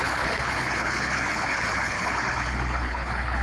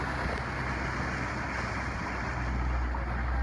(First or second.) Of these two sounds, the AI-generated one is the first